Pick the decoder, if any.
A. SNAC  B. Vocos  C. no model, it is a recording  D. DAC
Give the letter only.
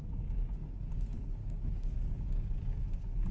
D